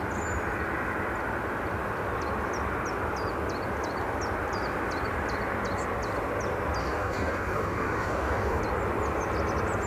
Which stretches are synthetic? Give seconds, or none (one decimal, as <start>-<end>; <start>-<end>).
6.8-8.6